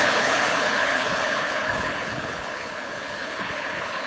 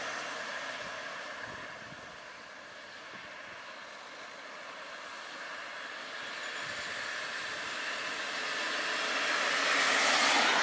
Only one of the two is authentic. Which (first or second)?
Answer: second